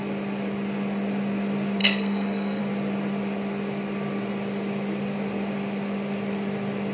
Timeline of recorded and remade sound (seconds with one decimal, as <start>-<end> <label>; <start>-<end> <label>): 0.0-1.8 recorded; 1.8-2.6 remade; 2.6-6.9 recorded